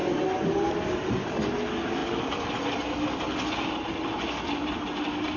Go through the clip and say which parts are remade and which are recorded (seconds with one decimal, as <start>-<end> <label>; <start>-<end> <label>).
0.0-5.4 recorded